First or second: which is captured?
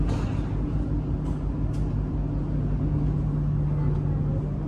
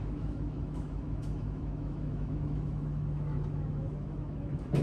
first